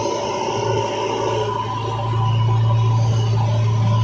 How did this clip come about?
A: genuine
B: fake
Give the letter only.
A